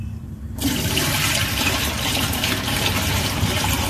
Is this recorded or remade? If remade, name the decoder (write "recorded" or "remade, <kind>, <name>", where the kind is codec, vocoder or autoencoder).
remade, vocoder, BigVGAN v2